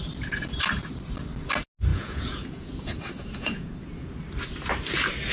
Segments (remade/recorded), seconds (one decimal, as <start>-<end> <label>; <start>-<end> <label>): 0.0-1.9 recorded; 1.9-4.1 remade; 4.1-5.3 recorded